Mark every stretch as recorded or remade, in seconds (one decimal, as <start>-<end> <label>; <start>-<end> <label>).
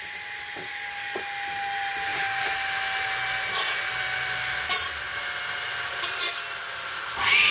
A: 0.0-0.7 recorded; 0.7-1.2 remade; 1.2-7.5 recorded